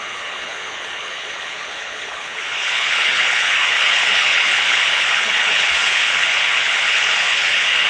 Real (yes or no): no